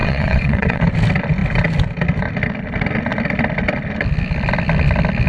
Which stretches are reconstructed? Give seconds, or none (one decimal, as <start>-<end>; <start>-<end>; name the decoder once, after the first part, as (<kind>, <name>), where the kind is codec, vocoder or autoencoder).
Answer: 0.0-0.8 (vocoder, WaveNeXt)